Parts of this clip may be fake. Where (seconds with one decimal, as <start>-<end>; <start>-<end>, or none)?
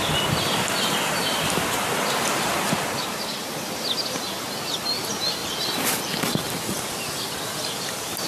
1.2-3.3; 5.4-6.4